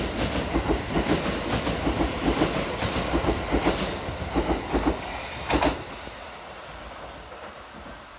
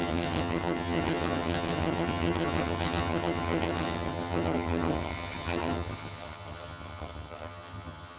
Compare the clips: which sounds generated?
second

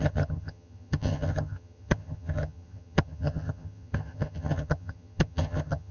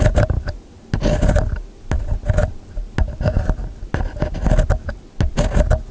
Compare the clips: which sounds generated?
first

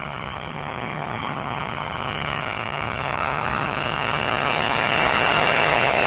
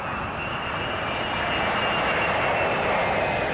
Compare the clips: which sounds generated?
first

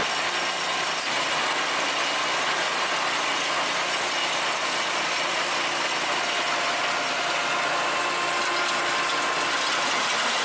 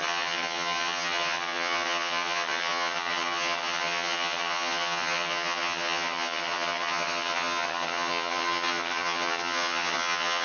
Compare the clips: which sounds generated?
second